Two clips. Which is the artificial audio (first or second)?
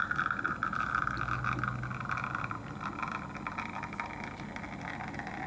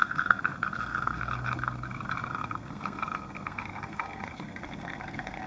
second